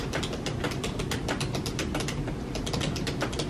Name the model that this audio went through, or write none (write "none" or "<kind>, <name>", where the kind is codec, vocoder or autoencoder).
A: none